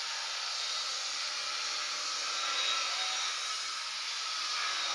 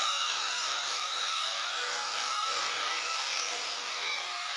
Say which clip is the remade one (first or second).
second